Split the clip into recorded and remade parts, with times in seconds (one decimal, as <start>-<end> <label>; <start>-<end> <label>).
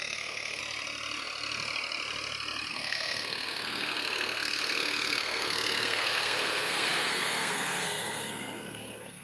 0.0-0.6 remade; 0.6-2.7 recorded; 2.7-9.2 remade